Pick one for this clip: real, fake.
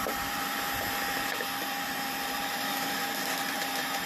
fake